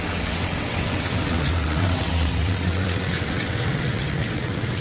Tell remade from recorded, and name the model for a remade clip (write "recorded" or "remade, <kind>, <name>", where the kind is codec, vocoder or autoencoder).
remade, vocoder, WaveNeXt